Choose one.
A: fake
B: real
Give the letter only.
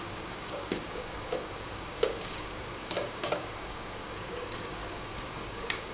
A